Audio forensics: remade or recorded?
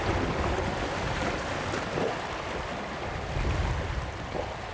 recorded